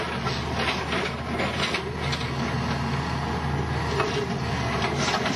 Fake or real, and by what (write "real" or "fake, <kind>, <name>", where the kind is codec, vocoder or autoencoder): real